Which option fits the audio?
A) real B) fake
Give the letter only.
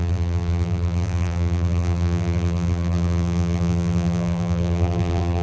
B